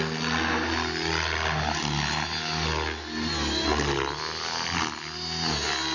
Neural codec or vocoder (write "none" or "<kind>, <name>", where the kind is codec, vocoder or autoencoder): none